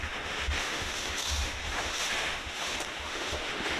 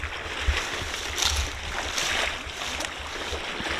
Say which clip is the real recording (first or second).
second